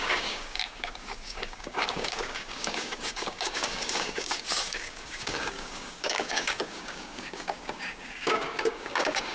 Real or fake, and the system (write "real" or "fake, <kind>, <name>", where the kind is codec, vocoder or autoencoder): fake, codec, DAC